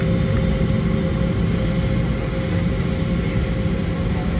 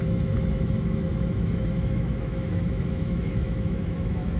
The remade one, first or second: second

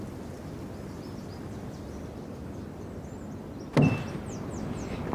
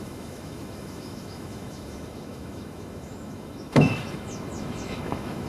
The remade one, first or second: second